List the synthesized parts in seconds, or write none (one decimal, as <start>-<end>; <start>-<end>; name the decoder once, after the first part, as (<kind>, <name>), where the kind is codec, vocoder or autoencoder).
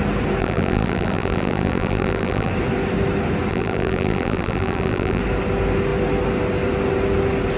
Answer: 0.4-2.5 (vocoder, BigVGAN v2); 3.5-5.2